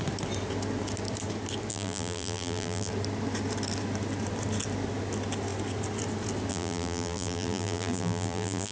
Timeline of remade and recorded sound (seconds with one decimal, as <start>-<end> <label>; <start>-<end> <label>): 0.0-1.7 recorded; 1.7-2.9 remade; 2.9-6.5 recorded; 6.5-8.7 remade